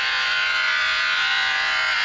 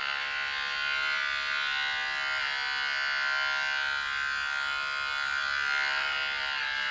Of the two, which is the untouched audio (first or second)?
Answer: second